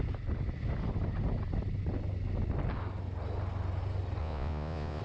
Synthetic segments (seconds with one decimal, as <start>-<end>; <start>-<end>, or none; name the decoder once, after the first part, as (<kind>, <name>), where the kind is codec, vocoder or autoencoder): 4.2-5.0 (vocoder, Vocos)